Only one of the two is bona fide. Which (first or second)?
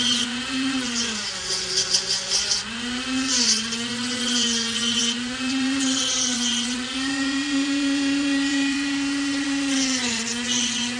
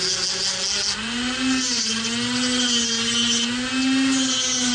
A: second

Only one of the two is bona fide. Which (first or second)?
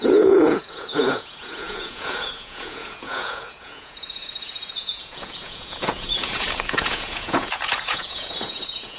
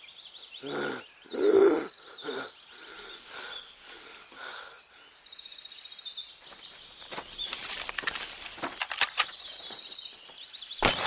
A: second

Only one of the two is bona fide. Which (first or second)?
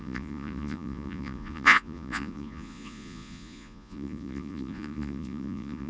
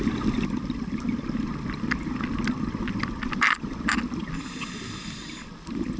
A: second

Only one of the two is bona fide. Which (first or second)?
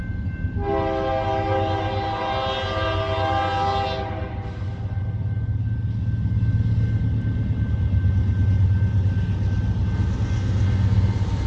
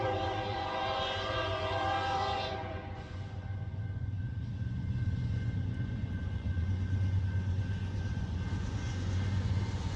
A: first